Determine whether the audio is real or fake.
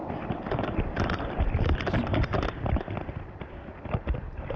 real